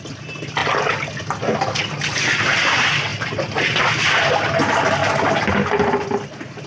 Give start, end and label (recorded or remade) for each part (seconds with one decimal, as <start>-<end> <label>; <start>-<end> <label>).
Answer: 0.0-6.7 recorded